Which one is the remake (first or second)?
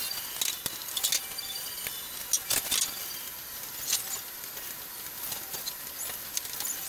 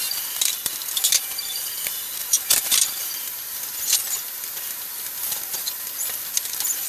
second